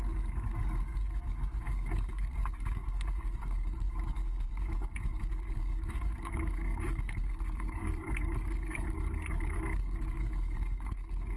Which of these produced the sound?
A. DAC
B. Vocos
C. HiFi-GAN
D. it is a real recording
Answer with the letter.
A